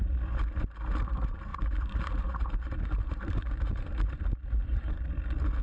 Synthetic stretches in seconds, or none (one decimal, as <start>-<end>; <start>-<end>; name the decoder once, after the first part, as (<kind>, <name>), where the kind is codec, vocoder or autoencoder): 1.5-4.9 (vocoder, BigVGAN v2)